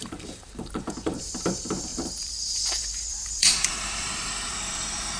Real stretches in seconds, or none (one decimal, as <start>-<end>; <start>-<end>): none